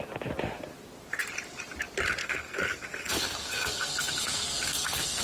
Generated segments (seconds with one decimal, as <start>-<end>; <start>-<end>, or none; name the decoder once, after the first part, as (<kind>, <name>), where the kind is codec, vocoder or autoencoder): 2.2-5.2 (codec, SNAC)